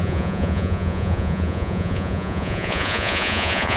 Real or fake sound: fake